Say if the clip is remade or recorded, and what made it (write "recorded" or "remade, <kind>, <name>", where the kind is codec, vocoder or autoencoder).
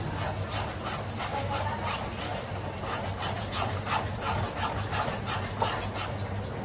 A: recorded